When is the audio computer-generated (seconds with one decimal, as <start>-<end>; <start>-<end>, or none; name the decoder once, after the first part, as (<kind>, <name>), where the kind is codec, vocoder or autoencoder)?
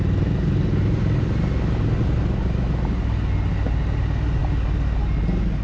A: none